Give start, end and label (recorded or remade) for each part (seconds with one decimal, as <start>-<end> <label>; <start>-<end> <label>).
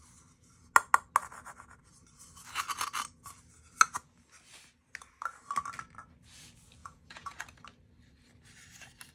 0.0-6.8 recorded; 6.8-7.4 remade; 7.4-9.1 recorded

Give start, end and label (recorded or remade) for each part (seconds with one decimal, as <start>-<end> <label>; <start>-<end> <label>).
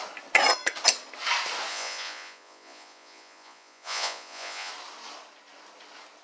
0.0-1.7 recorded; 1.7-4.7 remade; 4.7-6.2 recorded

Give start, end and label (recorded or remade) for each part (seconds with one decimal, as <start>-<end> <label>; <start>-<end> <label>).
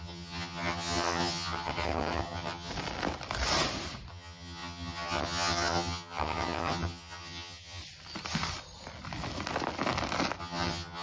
0.0-2.7 remade; 2.7-4.1 recorded; 4.1-7.8 remade; 7.8-10.4 recorded; 10.4-11.0 remade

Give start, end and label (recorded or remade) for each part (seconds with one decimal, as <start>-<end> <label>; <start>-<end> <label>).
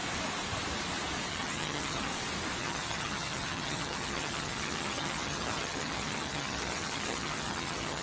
0.0-1.3 recorded; 1.3-2.1 remade; 2.1-2.6 recorded; 2.6-8.0 remade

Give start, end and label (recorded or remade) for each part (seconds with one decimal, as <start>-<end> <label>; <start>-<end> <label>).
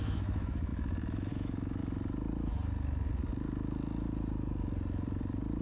0.0-1.8 remade; 1.8-5.6 recorded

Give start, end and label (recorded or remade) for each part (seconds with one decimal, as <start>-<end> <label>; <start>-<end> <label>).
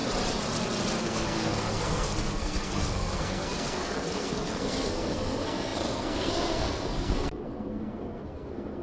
0.0-1.0 recorded; 1.0-8.8 remade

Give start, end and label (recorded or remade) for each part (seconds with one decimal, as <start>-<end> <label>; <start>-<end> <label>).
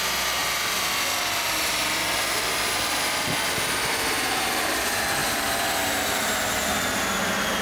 0.0-0.4 recorded; 0.4-1.1 remade; 1.1-1.8 recorded; 1.8-4.8 remade; 4.8-5.2 recorded; 5.2-6.3 remade; 6.3-7.6 recorded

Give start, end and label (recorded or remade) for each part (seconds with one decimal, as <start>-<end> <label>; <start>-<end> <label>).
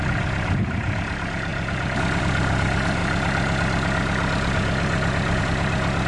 0.0-6.1 recorded